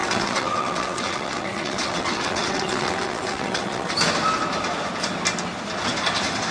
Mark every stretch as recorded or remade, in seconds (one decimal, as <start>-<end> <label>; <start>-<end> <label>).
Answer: 0.0-3.9 remade; 3.9-6.5 recorded